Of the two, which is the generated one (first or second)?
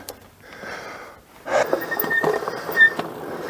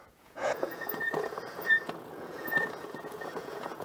second